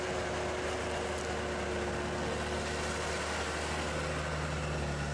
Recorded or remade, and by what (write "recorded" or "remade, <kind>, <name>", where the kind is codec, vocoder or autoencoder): recorded